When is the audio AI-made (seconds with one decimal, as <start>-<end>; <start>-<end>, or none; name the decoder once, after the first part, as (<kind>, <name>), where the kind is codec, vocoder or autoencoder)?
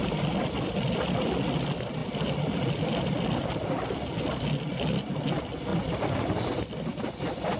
2.0-3.7 (vocoder, BigVGAN v2)